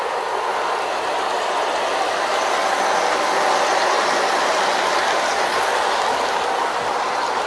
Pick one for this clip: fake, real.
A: real